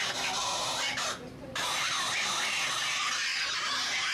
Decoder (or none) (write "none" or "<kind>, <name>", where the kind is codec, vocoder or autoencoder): none